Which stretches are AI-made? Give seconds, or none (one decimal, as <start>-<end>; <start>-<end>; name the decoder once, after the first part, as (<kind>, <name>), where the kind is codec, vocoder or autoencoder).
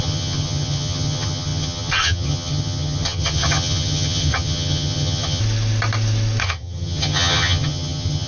0.0-5.4 (vocoder, HiFi-GAN); 6.4-8.3